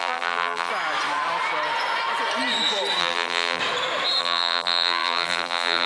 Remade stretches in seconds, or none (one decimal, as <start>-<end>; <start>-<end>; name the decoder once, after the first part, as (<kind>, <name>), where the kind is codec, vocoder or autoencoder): 0.0-0.7 (vocoder, BigVGAN v2); 3.0-3.6; 4.2-5.9